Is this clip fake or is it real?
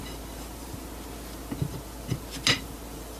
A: real